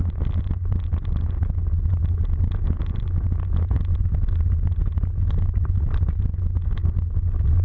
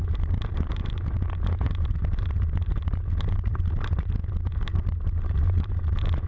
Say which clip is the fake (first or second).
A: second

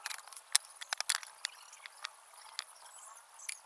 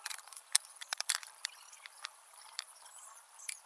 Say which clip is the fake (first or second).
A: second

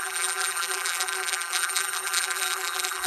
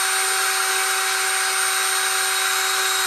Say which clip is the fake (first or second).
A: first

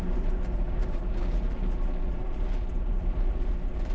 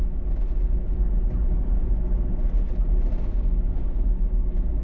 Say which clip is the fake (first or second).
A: first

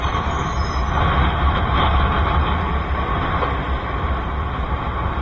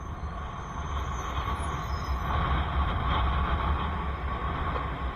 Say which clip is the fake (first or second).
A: first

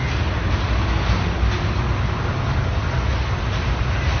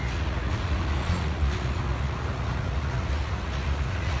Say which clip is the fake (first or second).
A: second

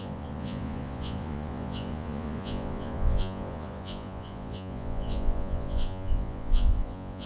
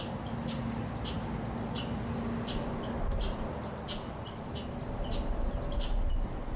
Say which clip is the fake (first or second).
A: first